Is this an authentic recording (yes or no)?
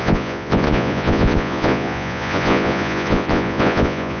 no